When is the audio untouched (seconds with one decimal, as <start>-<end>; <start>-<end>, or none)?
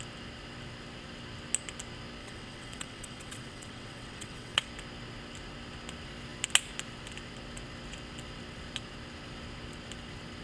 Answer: 0.0-2.2; 4.7-10.4